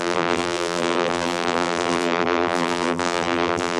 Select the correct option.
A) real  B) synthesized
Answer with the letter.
B